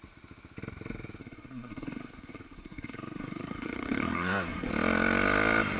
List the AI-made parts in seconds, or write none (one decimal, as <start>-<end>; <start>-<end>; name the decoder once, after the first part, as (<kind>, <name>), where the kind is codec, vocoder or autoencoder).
1.2-4.7 (codec, SNAC)